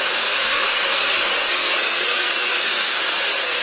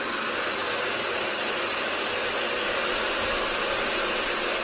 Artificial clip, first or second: first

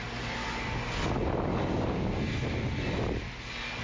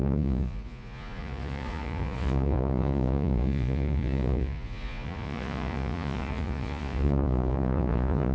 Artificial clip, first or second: second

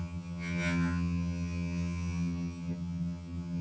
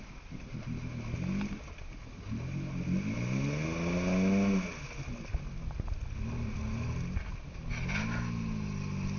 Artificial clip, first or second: first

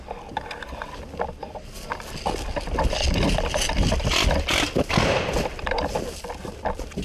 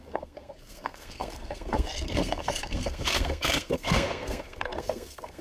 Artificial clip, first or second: second